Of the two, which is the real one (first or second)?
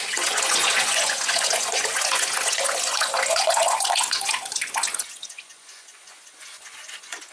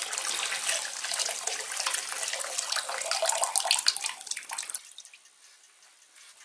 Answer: second